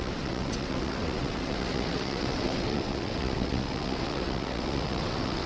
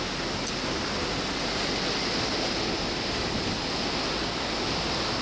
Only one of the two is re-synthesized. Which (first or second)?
first